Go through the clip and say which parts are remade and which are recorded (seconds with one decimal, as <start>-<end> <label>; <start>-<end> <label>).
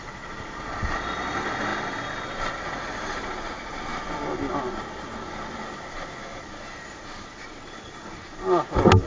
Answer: 0.0-9.1 recorded